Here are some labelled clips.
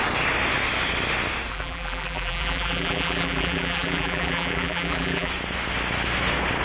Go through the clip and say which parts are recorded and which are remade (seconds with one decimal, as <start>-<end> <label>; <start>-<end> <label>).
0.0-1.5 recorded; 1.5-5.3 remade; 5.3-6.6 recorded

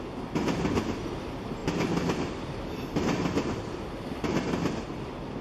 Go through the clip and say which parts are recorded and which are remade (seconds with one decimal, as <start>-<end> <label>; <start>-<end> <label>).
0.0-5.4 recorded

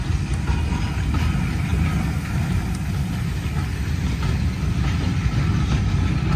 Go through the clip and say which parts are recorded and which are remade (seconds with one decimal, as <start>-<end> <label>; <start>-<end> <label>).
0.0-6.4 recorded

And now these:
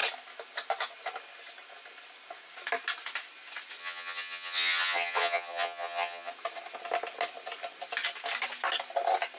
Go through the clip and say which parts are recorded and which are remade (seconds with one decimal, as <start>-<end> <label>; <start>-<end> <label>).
0.0-3.8 recorded; 3.8-6.3 remade; 6.3-9.4 recorded